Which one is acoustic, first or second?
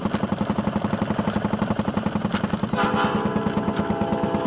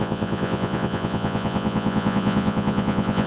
first